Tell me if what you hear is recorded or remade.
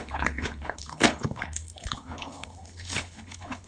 remade